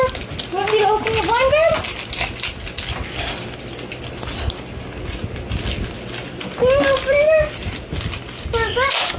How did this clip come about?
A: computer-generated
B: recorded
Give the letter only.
B